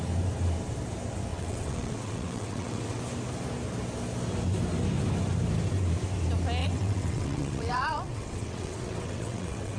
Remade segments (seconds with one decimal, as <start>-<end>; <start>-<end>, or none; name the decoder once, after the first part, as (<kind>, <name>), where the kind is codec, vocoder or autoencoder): 1.3-3.0 (vocoder, WaveNeXt); 6.6-9.8